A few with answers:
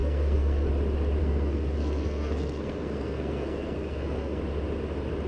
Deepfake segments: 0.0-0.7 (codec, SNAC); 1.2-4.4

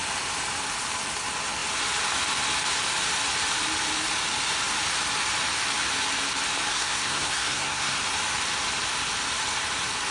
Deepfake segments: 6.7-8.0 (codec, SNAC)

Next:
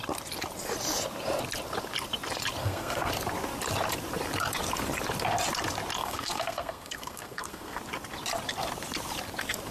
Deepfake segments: 2.6-3.1 (codec, SNAC); 6.0-7.8

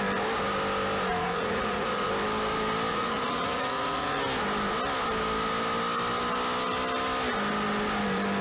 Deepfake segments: 1.2-2.1 (vocoder, Vocos); 2.9-4.2

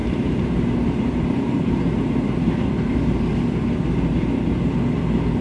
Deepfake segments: 0.0-3.2 (vocoder, BigVGAN v2)

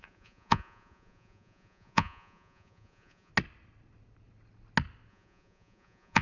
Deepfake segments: 0.0-3.3 (vocoder, Vocos); 5.1-6.2

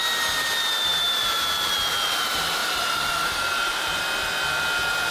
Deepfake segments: 0.9-1.4 (vocoder, BigVGAN v2); 2.6-4.0

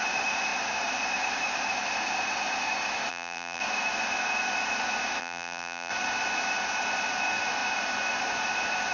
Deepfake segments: 3.1-3.6 (vocoder, BigVGAN v2); 5.2-5.9